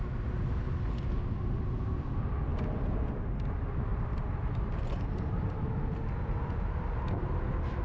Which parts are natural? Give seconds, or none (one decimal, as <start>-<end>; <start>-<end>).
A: 0.0-3.9; 4.7-7.8